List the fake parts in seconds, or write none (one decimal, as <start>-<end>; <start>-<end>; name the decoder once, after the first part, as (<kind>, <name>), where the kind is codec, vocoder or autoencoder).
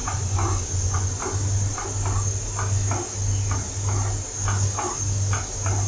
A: 0.0-1.2 (vocoder, Vocos)